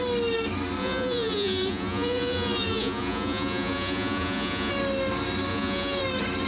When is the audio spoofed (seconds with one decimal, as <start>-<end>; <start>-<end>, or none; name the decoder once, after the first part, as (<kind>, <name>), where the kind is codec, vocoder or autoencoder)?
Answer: 0.8-4.7 (vocoder, Vocos); 5.5-6.0